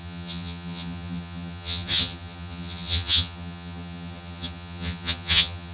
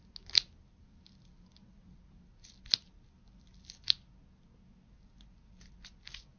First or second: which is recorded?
second